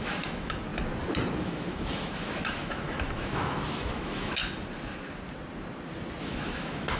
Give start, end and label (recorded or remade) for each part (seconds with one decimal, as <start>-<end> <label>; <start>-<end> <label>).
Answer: 0.0-0.7 remade; 0.7-1.4 recorded; 1.4-4.4 remade; 4.4-6.2 recorded; 6.2-7.0 remade